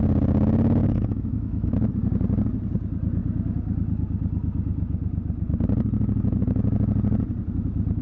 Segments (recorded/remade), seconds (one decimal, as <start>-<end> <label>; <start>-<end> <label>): 0.0-0.8 recorded; 0.8-1.9 remade; 1.9-8.0 recorded